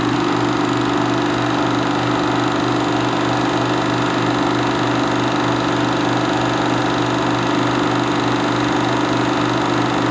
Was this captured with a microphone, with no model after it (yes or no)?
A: yes